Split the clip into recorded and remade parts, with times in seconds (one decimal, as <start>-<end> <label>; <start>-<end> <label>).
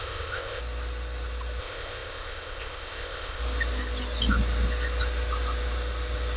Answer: 0.0-0.6 remade; 0.6-1.6 recorded; 1.6-3.4 remade; 3.4-6.4 recorded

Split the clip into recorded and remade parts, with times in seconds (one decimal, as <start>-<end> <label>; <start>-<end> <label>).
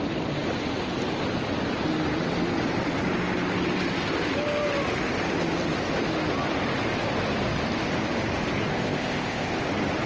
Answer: 0.0-8.7 recorded; 8.7-9.6 remade; 9.6-10.1 recorded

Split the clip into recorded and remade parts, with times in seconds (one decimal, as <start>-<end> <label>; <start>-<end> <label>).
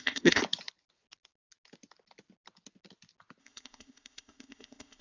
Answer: 0.0-0.4 remade; 0.4-3.4 recorded; 3.4-5.0 remade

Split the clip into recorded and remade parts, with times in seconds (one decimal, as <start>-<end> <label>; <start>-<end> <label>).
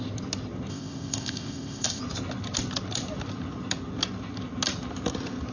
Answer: 0.0-0.7 recorded; 0.7-2.0 remade; 2.0-5.5 recorded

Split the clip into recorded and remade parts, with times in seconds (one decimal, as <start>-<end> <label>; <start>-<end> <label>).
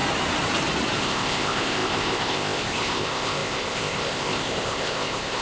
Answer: 0.0-1.0 recorded; 1.0-5.4 remade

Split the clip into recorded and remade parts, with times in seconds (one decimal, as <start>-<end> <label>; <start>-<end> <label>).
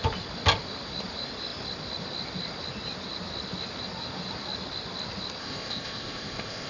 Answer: 0.0-5.4 recorded; 5.4-6.7 remade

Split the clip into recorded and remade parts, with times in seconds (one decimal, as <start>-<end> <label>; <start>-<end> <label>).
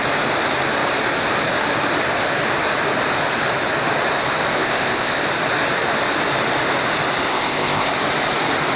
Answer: 0.0-4.5 recorded; 4.5-5.2 remade; 5.2-7.3 recorded; 7.3-7.9 remade; 7.9-8.8 recorded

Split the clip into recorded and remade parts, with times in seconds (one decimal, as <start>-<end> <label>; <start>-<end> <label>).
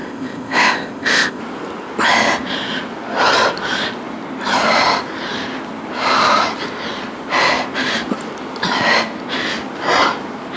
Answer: 0.0-1.4 remade; 1.4-10.6 recorded